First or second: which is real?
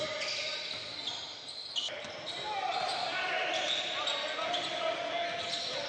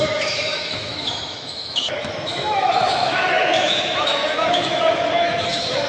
first